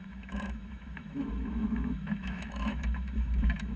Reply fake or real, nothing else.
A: fake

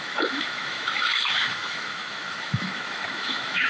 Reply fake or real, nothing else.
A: fake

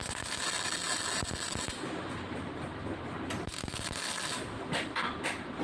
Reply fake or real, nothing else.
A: real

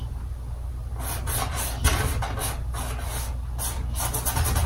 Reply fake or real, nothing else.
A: real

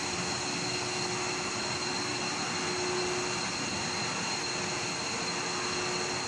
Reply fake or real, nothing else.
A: real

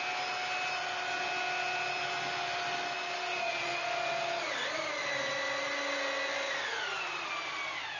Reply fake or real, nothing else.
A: real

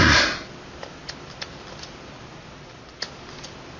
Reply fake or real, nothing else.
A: real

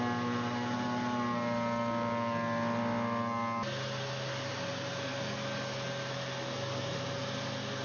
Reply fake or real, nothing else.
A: real